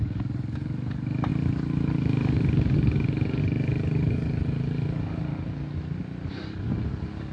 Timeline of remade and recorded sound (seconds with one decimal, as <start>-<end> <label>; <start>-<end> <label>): 0.0-5.3 remade; 5.3-6.3 recorded; 6.3-7.3 remade